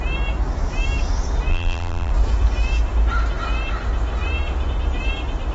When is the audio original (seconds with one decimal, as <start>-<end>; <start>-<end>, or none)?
0.0-1.5; 2.1-5.5